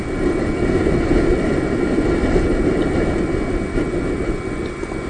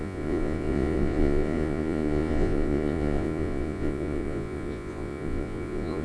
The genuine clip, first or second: first